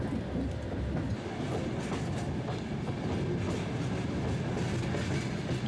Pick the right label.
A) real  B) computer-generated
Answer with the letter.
A